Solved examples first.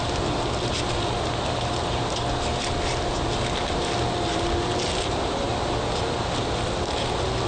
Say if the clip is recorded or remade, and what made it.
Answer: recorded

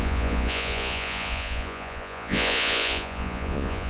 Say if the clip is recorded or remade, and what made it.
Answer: remade, vocoder, Vocos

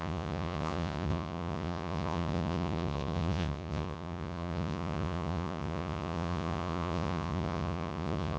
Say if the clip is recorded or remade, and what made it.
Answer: remade, vocoder, Vocos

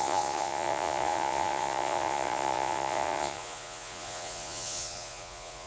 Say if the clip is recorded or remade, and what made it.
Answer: remade, vocoder, Vocos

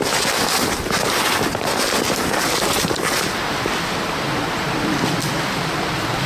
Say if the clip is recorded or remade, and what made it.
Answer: recorded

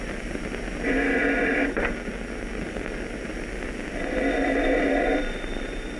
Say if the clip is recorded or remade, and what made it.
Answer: recorded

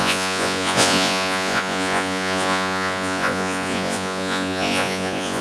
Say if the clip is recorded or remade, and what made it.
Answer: remade, vocoder, Vocos